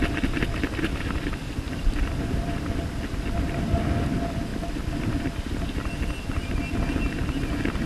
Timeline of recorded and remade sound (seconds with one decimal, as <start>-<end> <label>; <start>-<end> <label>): 0.0-7.9 recorded